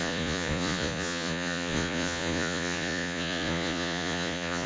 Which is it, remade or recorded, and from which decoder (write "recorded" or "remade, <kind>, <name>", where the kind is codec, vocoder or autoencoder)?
remade, vocoder, Vocos